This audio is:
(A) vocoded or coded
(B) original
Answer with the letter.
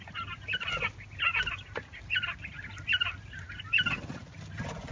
B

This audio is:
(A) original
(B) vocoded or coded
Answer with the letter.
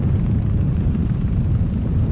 B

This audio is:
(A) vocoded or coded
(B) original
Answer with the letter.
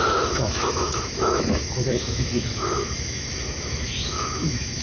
A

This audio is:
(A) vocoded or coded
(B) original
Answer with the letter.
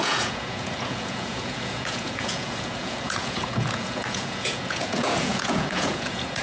A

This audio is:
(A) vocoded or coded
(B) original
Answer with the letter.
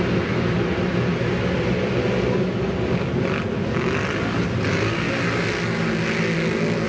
B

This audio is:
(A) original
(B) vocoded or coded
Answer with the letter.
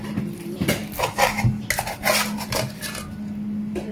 A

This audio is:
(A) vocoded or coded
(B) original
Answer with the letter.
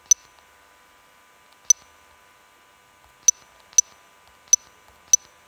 B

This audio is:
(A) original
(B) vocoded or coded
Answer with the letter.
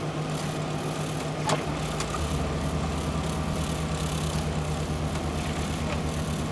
A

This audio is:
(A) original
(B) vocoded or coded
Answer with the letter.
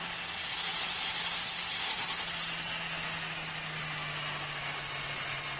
A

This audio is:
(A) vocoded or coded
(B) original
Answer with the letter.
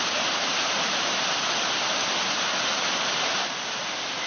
B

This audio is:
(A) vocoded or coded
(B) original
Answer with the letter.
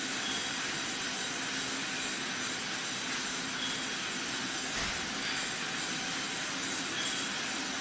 B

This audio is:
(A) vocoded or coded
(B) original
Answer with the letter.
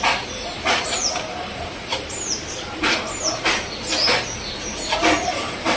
B